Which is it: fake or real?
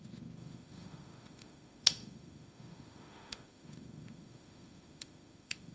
fake